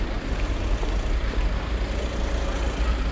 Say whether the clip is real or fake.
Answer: real